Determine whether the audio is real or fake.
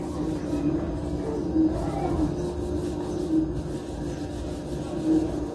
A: real